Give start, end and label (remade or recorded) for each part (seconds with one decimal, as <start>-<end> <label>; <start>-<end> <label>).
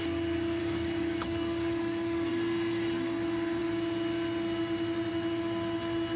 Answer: 0.0-0.6 recorded; 0.6-2.3 remade; 2.3-6.2 recorded